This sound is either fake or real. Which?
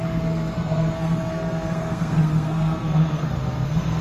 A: fake